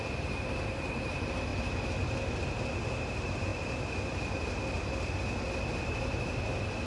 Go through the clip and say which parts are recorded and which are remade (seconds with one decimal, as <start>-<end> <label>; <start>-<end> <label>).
0.0-1.5 remade; 1.5-2.5 recorded; 2.5-3.5 remade; 3.5-5.6 recorded; 5.6-6.9 remade